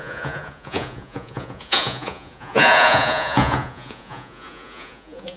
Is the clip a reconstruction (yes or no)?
yes